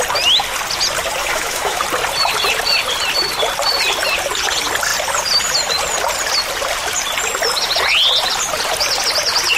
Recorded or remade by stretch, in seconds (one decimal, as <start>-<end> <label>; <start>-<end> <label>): 0.0-1.2 recorded; 1.2-1.8 remade; 1.8-9.6 recorded